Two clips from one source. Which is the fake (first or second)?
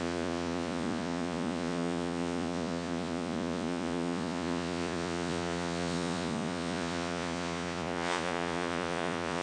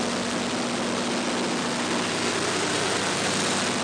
first